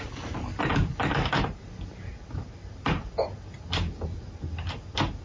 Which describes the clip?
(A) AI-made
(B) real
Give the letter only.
B